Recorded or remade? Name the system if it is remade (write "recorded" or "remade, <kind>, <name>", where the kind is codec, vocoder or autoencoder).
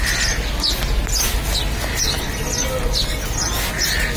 recorded